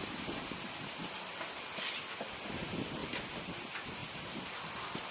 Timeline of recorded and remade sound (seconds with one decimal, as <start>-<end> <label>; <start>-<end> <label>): 0.0-5.1 recorded